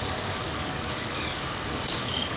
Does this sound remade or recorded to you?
remade